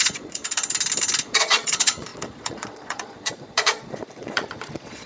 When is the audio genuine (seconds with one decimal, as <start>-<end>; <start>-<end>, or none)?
0.4-1.2